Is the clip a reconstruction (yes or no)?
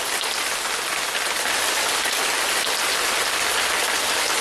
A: no